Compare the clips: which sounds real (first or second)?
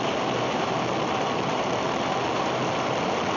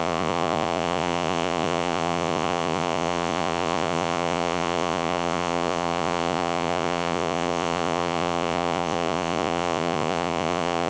first